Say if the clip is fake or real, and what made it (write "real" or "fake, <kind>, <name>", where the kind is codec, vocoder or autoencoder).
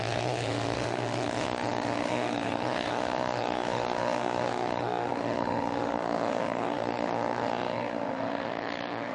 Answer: fake, autoencoder, DAC-VAE